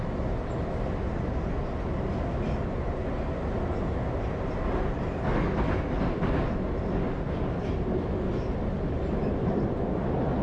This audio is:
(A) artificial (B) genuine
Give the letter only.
B